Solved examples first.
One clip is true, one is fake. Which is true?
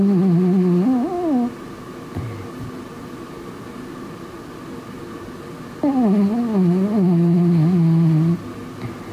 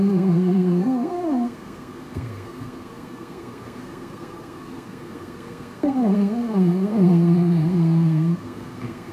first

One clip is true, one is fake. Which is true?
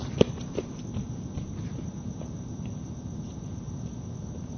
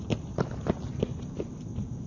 second